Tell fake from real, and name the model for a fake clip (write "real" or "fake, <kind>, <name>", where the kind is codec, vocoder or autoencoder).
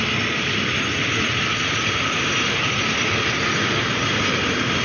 real